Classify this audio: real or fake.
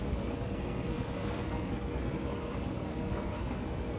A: fake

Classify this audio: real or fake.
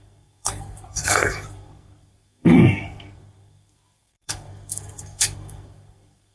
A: fake